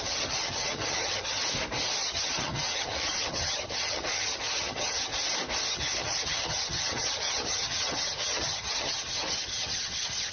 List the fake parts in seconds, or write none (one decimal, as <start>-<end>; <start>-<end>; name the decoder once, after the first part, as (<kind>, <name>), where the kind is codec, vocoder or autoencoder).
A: 0.0-1.4 (vocoder, HiFi-GAN); 2.0-5.1; 5.7-10.3